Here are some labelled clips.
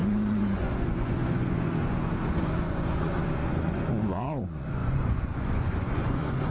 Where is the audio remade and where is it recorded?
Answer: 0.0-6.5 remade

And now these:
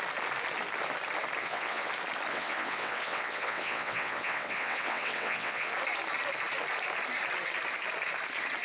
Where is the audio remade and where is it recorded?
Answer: 0.0-1.4 recorded; 1.4-1.9 remade; 1.9-2.3 recorded; 2.3-5.7 remade; 5.7-8.6 recorded

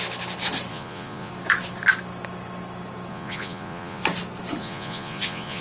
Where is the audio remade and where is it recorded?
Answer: 0.0-0.7 recorded; 0.7-1.3 remade; 1.3-3.1 recorded; 3.1-4.0 remade; 4.0-4.6 recorded; 4.6-5.6 remade

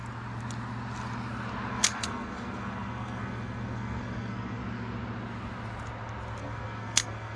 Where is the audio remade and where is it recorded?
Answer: 0.0-1.7 recorded; 1.7-4.6 remade; 4.6-6.4 recorded; 6.4-7.4 remade